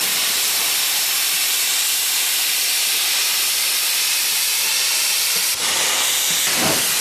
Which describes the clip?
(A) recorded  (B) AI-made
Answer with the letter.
B